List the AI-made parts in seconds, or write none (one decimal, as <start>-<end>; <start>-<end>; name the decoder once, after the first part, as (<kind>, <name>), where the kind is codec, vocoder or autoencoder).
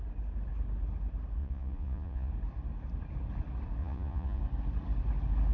1.4-2.3 (vocoder, Vocos); 3.8-4.4